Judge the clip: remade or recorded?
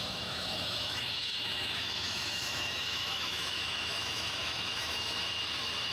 remade